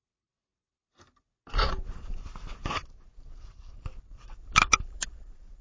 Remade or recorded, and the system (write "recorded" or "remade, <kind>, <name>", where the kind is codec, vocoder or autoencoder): recorded